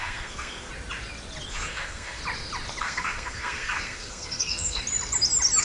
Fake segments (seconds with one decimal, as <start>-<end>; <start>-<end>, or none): 0.0-0.7; 1.5-2.2; 2.8-4.8